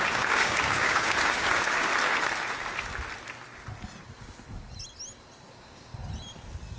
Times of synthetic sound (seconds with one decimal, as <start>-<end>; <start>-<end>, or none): 0.0-1.9; 5.5-5.9